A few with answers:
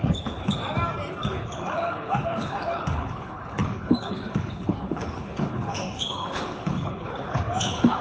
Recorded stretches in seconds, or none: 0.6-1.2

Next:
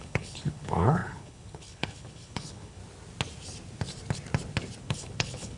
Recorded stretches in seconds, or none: 2.8-4.8